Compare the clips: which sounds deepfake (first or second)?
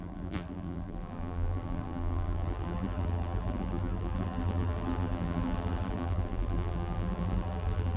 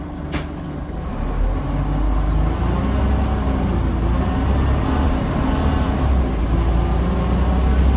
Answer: first